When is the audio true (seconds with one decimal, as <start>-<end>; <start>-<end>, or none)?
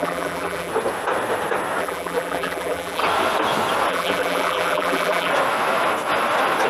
0.7-1.8; 3.0-3.9; 5.3-6.7